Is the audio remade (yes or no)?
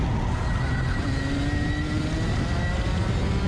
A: no